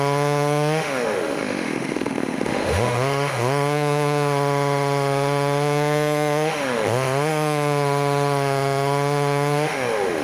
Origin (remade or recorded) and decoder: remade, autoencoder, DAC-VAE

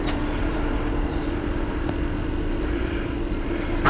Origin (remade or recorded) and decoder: remade, vocoder, BigVGAN v2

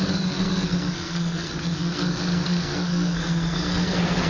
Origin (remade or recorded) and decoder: remade, codec, SNAC